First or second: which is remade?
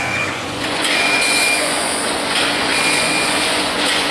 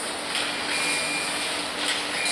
first